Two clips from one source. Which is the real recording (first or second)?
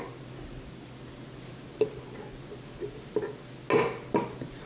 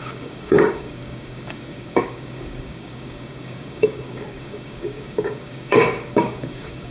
first